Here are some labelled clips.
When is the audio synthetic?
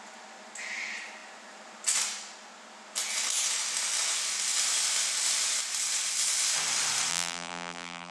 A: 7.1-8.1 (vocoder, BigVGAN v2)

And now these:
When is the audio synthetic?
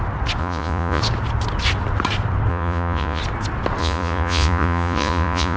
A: 0.4-1.0 (vocoder, Vocos); 2.5-3.2; 3.8-5.6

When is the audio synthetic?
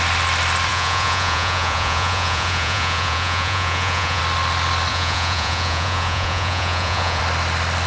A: 0.7-4.2 (vocoder, Vocos); 4.9-7.2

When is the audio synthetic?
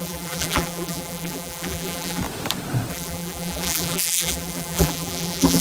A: 0.0-2.2 (vocoder, BigVGAN v2); 2.9-5.6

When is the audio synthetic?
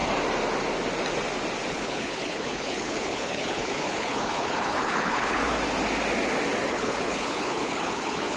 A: 1.7-5.4 (codec, HILCodec); 6.7-8.4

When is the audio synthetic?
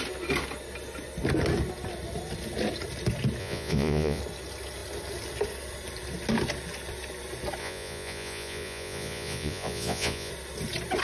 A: 3.4-4.2 (vocoder, Vocos); 7.6-10.3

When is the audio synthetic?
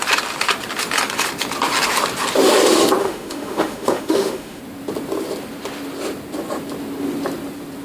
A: 3.0-4.6 (autoencoder, DAC-VAE)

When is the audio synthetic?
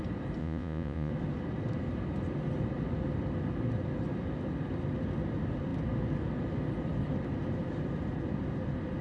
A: 0.4-1.1 (vocoder, Vocos)